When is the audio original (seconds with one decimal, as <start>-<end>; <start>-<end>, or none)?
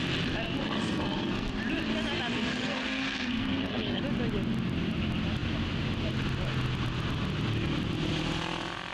0.0-0.6; 1.5-2.5; 4.0-8.9